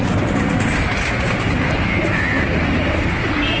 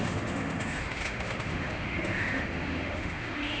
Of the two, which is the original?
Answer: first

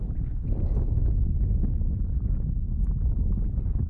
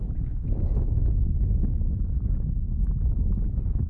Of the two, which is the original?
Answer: first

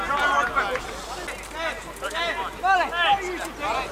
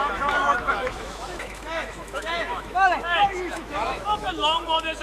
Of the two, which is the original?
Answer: first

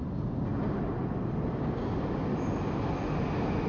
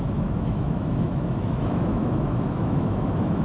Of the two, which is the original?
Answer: first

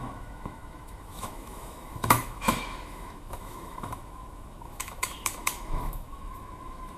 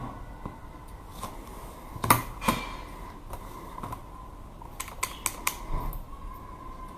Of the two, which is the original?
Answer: second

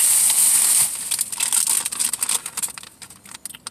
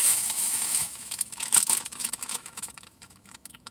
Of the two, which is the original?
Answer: first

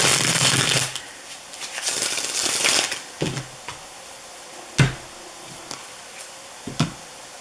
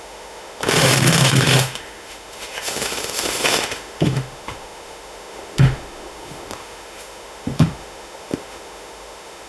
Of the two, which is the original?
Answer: first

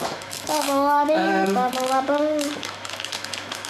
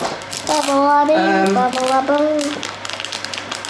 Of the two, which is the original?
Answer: second